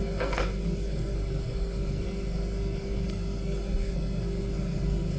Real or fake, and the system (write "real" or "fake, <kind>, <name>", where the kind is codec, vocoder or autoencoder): fake, codec, SNAC